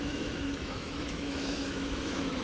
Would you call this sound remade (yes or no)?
yes